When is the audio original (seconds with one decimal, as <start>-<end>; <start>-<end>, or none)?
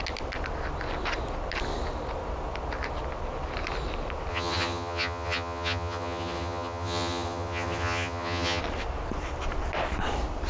0.0-4.3; 8.6-10.5